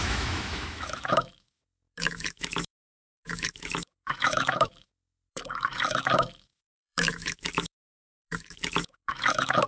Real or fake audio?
fake